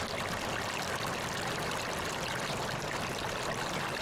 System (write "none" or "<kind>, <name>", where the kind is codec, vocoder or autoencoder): none